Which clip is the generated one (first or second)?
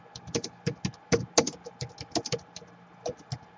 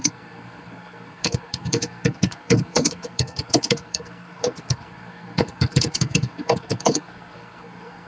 second